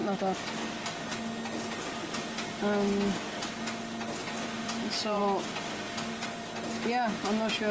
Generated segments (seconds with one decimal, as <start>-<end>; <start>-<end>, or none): 0.7-1.1; 4.6-5.2